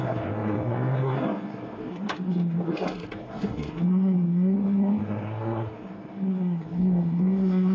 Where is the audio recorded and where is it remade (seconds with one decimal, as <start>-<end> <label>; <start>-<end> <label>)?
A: 0.0-7.7 remade